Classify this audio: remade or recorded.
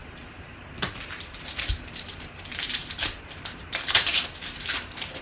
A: remade